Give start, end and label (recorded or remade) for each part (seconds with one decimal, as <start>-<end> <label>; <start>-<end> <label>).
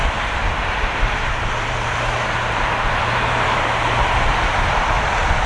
0.0-0.6 recorded; 0.6-5.5 remade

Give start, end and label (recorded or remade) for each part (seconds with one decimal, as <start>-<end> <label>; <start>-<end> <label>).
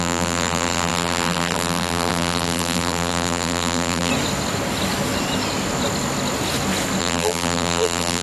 0.0-4.1 remade; 4.1-7.0 recorded; 7.0-8.2 remade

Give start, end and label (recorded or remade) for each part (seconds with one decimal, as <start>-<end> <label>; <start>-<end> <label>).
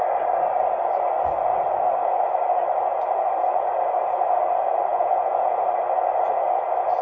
0.0-4.9 recorded; 4.9-5.6 remade; 5.6-7.0 recorded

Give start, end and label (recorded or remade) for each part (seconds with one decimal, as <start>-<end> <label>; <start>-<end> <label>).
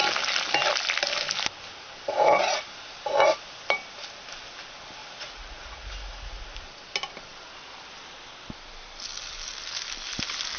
0.0-5.0 recorded; 5.0-6.4 remade; 6.4-10.6 recorded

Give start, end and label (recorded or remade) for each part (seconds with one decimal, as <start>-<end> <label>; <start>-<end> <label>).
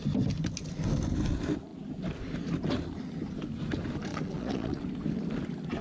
0.0-4.1 recorded; 4.1-4.8 remade; 4.8-5.8 recorded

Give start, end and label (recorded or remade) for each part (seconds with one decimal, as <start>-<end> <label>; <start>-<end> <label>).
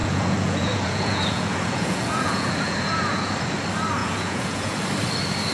0.0-3.3 remade; 3.3-4.0 recorded; 4.0-4.8 remade; 4.8-5.5 recorded